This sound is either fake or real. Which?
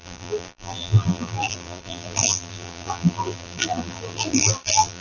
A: fake